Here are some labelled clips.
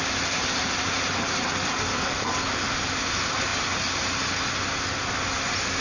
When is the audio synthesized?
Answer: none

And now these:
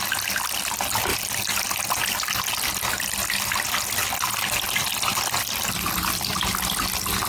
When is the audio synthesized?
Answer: none